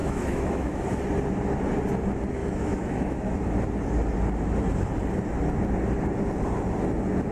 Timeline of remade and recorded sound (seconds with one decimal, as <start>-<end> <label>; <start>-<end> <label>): 0.0-1.0 remade; 1.0-2.4 recorded; 2.4-3.4 remade; 3.4-7.3 recorded